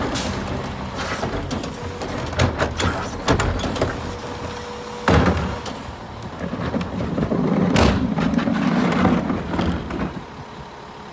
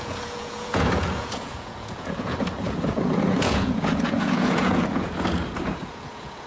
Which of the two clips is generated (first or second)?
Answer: second